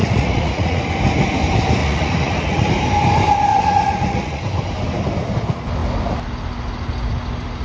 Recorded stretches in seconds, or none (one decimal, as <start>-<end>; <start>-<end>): 0.9-1.8; 2.7-3.5; 4.4-7.6